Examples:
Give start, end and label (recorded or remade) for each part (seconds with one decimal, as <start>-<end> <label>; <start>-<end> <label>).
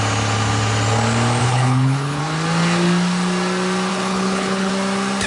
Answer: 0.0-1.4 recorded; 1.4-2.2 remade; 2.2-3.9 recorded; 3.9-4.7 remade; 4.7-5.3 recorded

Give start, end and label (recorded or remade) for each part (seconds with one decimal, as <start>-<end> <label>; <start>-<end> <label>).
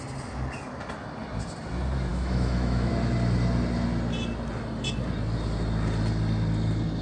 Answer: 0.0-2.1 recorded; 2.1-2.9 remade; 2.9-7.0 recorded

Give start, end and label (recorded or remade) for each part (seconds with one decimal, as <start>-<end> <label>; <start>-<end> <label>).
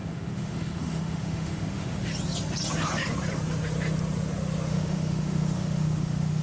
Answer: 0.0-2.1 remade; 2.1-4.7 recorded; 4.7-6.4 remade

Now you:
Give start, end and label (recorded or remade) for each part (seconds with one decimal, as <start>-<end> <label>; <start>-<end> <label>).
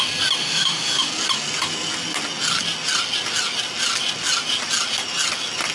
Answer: 0.0-0.4 recorded; 0.4-1.1 remade; 1.1-5.7 recorded